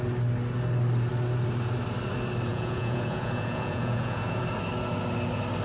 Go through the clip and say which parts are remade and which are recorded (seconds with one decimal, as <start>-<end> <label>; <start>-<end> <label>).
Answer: 0.0-2.5 recorded; 2.5-4.4 remade; 4.4-5.6 recorded